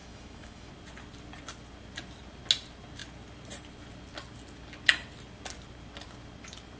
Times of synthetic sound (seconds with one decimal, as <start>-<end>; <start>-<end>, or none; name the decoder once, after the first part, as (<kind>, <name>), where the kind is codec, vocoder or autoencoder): 0.0-0.7 (autoencoder, DAC-VAE)